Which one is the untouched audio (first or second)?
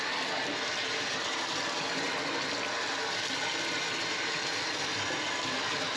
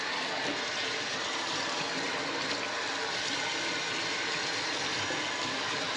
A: first